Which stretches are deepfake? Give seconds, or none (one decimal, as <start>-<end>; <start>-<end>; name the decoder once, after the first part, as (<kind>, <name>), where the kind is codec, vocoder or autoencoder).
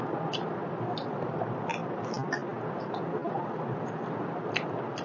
none